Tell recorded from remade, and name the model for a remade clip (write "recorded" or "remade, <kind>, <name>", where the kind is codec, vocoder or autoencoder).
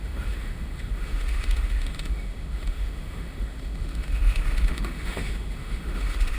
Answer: remade, autoencoder, DAC-VAE